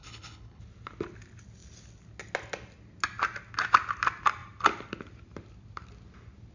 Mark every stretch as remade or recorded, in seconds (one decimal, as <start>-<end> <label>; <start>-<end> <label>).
0.0-0.6 remade; 0.6-6.5 recorded